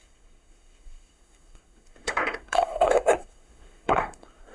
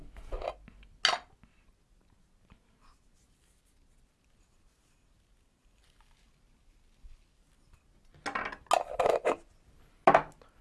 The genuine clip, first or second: second